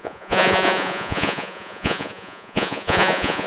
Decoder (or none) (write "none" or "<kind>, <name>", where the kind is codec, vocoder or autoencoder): vocoder, Vocos